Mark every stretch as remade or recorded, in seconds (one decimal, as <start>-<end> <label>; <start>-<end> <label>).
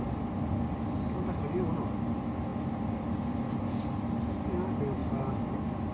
0.0-2.5 recorded; 2.5-3.3 remade; 3.3-5.0 recorded; 5.0-5.9 remade